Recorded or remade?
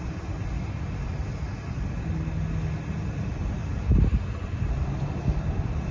recorded